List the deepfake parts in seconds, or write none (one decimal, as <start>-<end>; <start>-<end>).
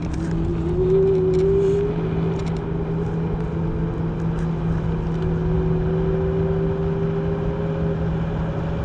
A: none